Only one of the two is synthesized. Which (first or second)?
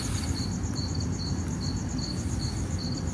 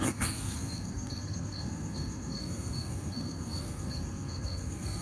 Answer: second